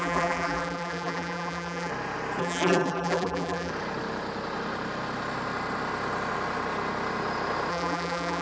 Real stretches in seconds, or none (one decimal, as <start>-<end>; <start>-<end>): 1.9-2.4; 3.7-7.7